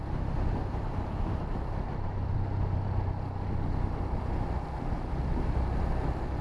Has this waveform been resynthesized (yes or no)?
no